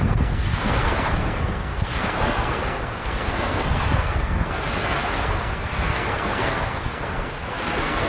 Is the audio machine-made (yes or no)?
yes